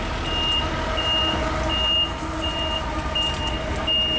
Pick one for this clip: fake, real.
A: real